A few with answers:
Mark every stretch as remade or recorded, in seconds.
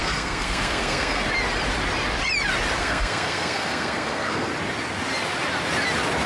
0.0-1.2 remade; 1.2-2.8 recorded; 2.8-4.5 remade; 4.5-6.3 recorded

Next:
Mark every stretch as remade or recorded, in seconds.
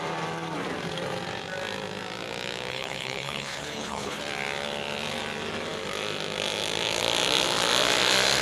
0.0-2.7 recorded; 2.7-4.2 remade; 4.2-8.4 recorded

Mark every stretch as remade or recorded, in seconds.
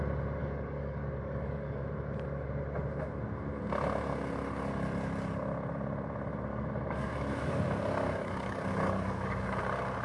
0.0-0.4 recorded; 0.4-1.8 remade; 1.8-6.5 recorded; 6.5-9.6 remade; 9.6-10.0 recorded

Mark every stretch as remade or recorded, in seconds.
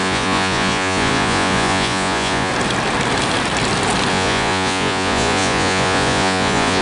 0.0-2.5 remade; 2.5-4.1 recorded; 4.1-6.8 remade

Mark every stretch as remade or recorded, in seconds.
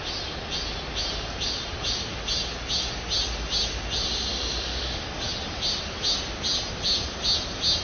0.0-4.3 recorded; 4.3-5.3 remade; 5.3-7.8 recorded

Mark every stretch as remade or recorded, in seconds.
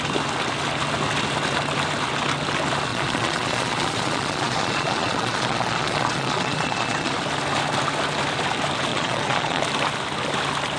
0.0-2.9 recorded; 2.9-7.1 remade; 7.1-8.9 recorded; 8.9-9.6 remade; 9.6-10.8 recorded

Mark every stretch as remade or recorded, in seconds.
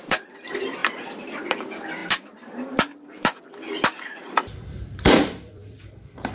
0.0-0.8 remade; 0.8-1.4 recorded; 1.4-6.3 remade